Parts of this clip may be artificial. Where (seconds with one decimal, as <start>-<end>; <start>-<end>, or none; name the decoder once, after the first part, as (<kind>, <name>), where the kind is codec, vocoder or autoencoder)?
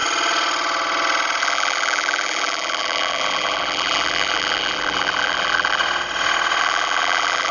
1.4-5.8 (vocoder, BigVGAN v2); 6.6-7.5